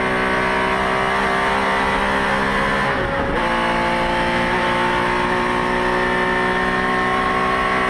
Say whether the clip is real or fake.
real